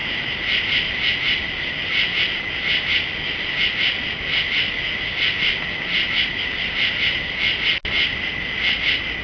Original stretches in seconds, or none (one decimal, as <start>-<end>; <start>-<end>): 0.0-9.2